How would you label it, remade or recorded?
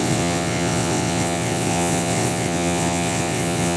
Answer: remade